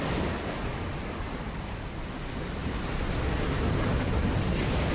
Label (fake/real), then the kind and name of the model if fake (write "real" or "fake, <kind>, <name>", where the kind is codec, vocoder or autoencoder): real